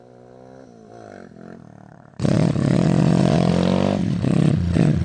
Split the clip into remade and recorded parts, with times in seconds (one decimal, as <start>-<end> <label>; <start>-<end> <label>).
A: 0.0-1.9 recorded; 1.9-3.5 remade; 3.5-4.0 recorded; 4.0-5.0 remade